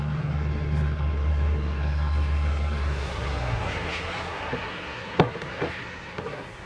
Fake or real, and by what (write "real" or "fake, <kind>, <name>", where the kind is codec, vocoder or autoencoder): fake, codec, SNAC